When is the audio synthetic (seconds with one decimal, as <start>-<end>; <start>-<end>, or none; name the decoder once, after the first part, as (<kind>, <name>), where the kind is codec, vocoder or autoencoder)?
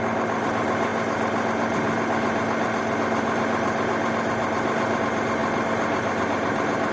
none